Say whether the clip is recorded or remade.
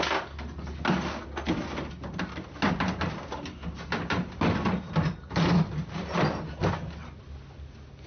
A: recorded